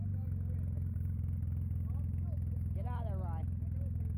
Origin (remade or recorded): recorded